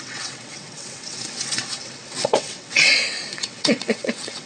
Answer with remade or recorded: remade